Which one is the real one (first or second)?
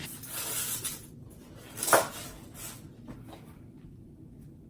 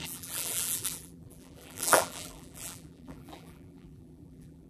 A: first